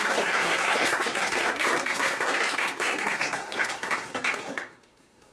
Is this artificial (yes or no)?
yes